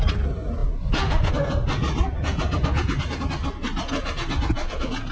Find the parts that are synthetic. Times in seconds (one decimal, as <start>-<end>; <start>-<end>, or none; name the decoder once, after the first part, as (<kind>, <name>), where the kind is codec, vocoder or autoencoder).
none